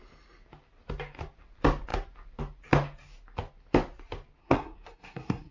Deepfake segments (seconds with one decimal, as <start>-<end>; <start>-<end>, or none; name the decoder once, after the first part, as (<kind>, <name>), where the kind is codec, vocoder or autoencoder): 4.4-5.5 (codec, SNAC)